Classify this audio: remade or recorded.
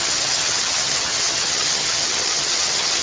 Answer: remade